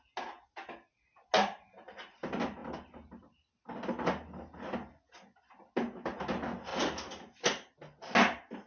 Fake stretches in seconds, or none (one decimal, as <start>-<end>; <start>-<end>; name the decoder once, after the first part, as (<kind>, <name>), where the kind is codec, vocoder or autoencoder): none